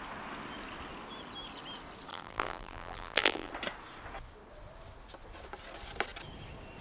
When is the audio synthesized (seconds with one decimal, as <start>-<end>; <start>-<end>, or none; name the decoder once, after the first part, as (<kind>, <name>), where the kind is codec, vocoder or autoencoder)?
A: 2.1-3.5 (vocoder, BigVGAN v2)